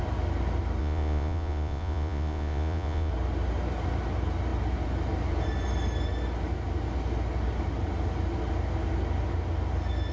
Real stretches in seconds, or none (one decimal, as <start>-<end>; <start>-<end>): 0.0-0.8; 3.1-10.1